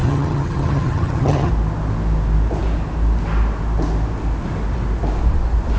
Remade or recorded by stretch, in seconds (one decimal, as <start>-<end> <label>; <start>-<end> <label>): 0.0-1.5 remade; 1.5-5.8 recorded